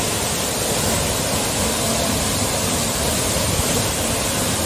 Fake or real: real